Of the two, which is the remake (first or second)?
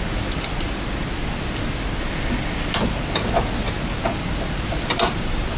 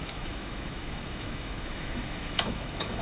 second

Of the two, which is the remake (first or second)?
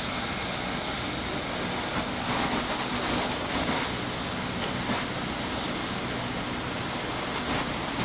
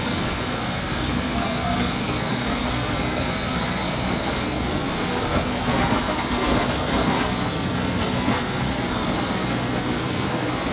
second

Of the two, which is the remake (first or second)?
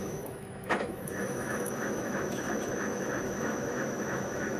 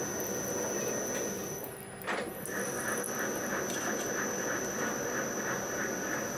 first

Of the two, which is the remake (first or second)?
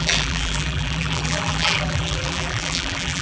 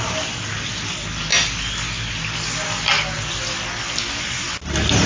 first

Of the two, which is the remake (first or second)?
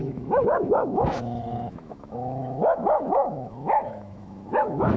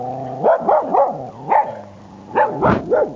first